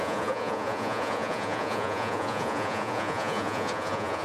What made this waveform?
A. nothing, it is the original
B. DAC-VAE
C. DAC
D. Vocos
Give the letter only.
D